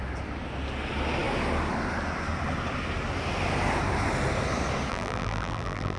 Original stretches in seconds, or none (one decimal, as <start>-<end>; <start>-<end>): 0.0-4.9